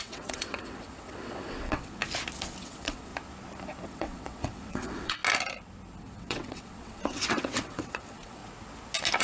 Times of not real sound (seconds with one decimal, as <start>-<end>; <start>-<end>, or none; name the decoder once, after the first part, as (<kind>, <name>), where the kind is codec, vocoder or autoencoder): 0.0-2.0 (vocoder, WaveNeXt); 2.6-3.1; 3.8-5.2; 6.0-8.4

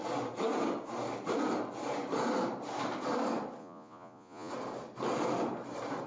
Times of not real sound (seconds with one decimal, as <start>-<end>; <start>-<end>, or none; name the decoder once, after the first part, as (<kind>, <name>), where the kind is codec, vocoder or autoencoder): 3.6-4.5 (vocoder, Vocos)

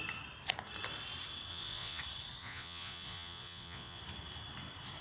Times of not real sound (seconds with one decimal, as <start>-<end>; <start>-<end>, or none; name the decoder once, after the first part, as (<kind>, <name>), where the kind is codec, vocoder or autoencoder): 1.5-2.0 (vocoder, Vocos); 2.4-4.0

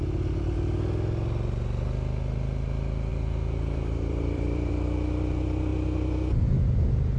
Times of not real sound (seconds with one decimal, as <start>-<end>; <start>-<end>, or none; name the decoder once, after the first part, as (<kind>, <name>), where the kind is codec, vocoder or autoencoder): 3.1-4.7 (vocoder, BigVGAN v2)

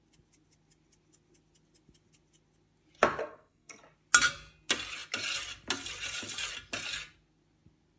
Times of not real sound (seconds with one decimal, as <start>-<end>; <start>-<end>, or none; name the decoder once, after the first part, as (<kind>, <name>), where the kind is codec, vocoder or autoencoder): 3.2-3.8 (codec, SNAC)

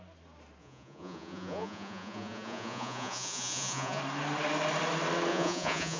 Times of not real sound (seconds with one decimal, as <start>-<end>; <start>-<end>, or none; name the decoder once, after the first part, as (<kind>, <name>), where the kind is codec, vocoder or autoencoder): 0.6-4.0 (vocoder, Vocos); 5.3-6.0

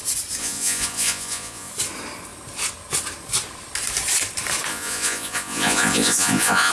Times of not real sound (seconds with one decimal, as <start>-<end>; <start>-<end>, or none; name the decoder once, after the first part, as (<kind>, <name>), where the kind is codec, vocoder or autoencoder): 0.4-1.7 (vocoder, Vocos); 4.7-6.7